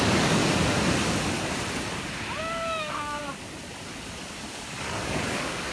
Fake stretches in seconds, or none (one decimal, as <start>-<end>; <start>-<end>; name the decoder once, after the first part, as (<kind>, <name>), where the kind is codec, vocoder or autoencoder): 0.0-0.4 (codec, DAC); 2.4-3.2; 4.5-5.7